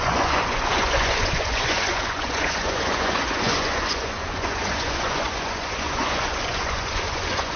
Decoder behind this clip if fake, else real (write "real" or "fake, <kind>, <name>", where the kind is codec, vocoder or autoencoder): fake, vocoder, Vocos